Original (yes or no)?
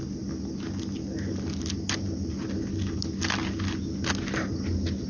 yes